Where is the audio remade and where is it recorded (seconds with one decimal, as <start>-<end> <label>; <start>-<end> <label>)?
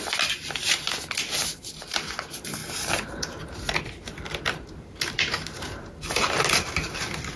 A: 0.0-7.4 recorded